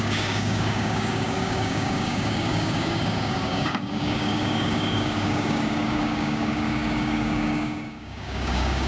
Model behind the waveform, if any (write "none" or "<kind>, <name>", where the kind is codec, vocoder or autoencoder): codec, DAC